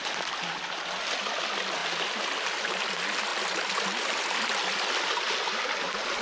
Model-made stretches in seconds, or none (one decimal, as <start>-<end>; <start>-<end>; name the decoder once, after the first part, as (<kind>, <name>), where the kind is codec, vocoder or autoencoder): none